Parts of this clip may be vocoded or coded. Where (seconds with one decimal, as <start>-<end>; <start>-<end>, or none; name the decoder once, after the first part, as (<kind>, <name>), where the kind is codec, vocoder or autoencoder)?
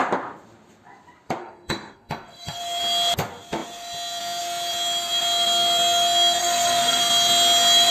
1.4-2.6 (codec, SNAC); 6.4-7.0